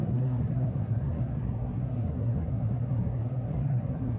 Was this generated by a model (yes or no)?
yes